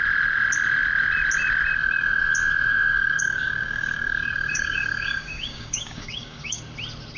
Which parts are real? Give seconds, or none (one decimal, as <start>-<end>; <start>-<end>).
0.0-2.9; 6.6-7.2